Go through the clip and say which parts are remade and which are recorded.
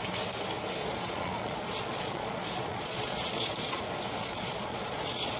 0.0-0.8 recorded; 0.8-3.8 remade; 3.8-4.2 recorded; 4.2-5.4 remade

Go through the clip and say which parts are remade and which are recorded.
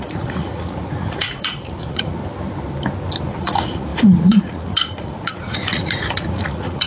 0.0-2.2 remade; 2.2-3.2 recorded; 3.2-6.9 remade